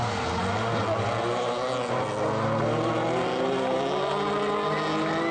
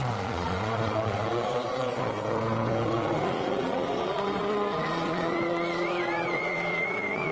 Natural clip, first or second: first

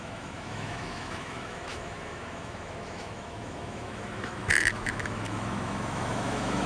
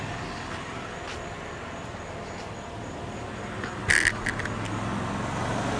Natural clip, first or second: second